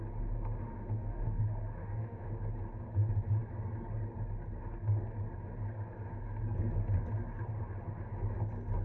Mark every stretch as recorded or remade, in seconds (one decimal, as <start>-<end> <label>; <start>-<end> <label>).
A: 0.0-0.6 recorded; 0.6-1.4 remade; 1.4-1.8 recorded; 1.8-2.3 remade; 2.3-8.8 recorded